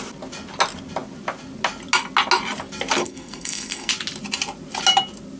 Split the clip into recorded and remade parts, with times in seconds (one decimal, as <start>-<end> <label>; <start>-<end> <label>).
0.0-3.0 recorded; 3.0-3.9 remade; 3.9-5.4 recorded

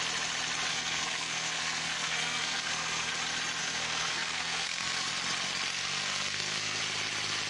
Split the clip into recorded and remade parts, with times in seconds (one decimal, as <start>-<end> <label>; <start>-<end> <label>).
0.0-0.7 recorded; 0.7-3.1 remade; 3.1-3.6 recorded; 3.6-5.1 remade; 5.1-5.7 recorded; 5.7-6.8 remade; 6.8-7.5 recorded

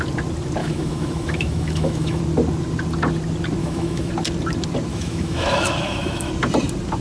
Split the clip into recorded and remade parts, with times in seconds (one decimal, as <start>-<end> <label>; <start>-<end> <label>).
0.0-0.6 recorded; 0.6-2.2 remade; 2.2-3.6 recorded; 3.6-4.1 remade; 4.1-4.9 recorded; 4.9-6.3 remade; 6.3-7.0 recorded

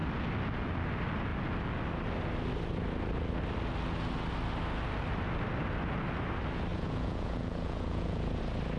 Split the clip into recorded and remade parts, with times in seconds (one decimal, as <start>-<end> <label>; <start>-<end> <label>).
0.0-6.7 recorded; 6.7-8.4 remade; 8.4-8.8 recorded